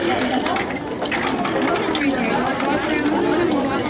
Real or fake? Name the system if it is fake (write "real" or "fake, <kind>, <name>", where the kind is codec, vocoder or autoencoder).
real